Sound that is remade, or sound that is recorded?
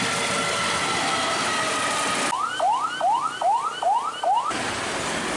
recorded